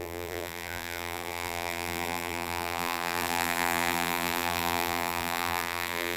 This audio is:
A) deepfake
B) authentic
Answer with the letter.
A